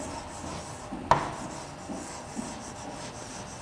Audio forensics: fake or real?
real